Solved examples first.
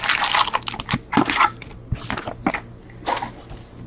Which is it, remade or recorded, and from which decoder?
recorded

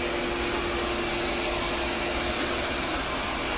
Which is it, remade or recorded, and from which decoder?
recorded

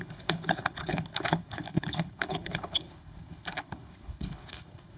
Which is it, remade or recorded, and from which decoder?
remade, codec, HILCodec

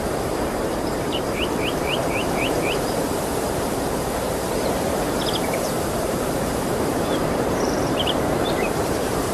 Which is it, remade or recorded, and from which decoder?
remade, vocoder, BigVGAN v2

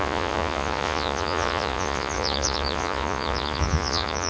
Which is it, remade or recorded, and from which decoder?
remade, vocoder, Vocos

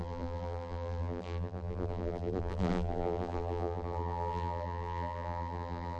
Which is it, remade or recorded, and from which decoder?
remade, vocoder, BigVGAN v2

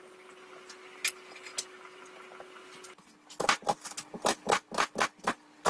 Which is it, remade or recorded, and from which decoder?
recorded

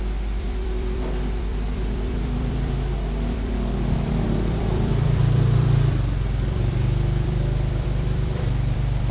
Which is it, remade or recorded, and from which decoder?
remade, vocoder, BigVGAN v2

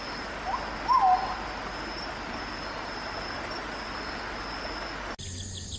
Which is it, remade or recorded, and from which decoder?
recorded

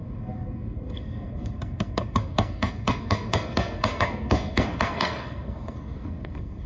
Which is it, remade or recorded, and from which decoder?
remade, codec, SNAC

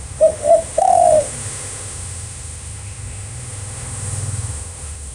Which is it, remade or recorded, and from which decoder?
remade, autoencoder, DAC-VAE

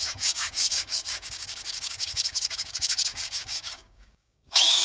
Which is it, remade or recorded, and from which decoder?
remade, codec, DAC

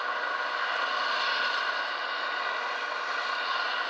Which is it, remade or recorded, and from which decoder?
recorded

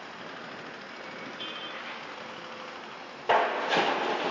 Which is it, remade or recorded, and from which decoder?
recorded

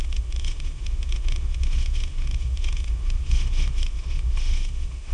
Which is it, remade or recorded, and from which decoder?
remade, autoencoder, DAC-VAE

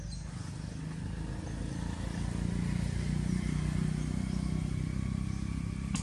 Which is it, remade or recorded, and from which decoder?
recorded